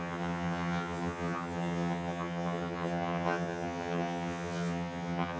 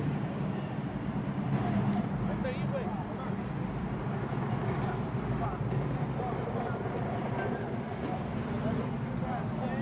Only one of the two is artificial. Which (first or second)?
first